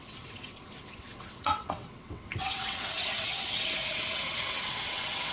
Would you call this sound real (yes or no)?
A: no